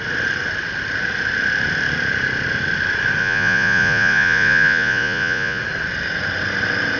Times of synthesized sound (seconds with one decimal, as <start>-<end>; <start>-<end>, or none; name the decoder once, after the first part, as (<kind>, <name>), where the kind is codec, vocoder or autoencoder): 3.2-5.6 (vocoder, Vocos)